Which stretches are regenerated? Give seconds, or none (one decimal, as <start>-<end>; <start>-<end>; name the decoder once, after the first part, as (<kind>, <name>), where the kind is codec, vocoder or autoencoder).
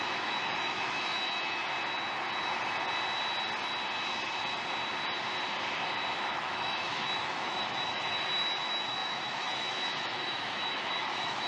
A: 0.0-1.6 (autoencoder, DAC-VAE); 6.1-11.5